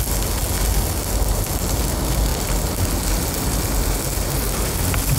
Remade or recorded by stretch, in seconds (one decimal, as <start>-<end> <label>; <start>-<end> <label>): 0.0-5.2 recorded